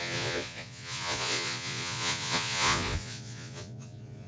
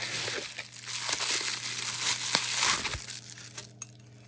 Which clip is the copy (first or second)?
first